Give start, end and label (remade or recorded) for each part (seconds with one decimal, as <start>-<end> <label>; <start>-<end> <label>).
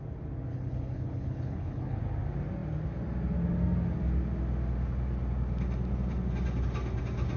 0.0-0.5 recorded; 0.5-2.0 remade; 2.0-7.4 recorded